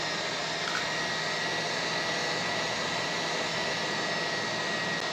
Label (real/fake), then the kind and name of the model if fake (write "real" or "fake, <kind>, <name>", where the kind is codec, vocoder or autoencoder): real